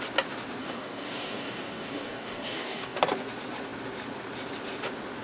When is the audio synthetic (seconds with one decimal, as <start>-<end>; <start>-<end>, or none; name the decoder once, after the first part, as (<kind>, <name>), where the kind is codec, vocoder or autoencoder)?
0.6-3.0 (codec, DAC)